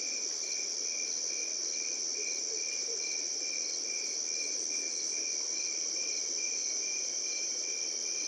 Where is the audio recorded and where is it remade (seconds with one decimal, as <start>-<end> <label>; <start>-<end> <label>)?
0.0-6.6 recorded; 6.6-7.6 remade; 7.6-8.3 recorded